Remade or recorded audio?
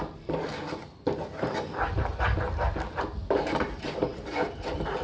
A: recorded